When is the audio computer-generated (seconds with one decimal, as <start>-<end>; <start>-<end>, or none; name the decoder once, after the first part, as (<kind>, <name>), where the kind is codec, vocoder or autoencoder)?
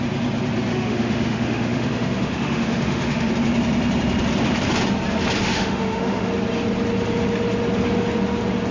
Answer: 0.7-3.3 (autoencoder, DAC-VAE); 5.4-6.3